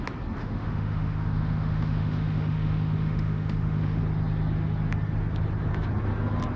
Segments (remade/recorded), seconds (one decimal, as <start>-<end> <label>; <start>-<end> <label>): 0.0-0.4 recorded; 0.4-4.0 remade; 4.0-6.6 recorded